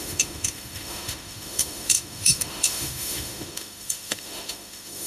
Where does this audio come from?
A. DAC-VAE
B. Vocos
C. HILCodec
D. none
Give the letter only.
A